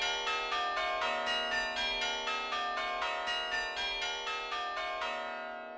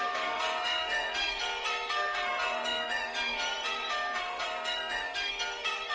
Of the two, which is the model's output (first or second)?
second